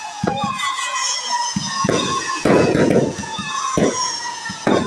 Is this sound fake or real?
fake